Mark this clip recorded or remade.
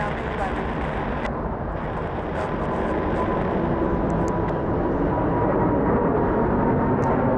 recorded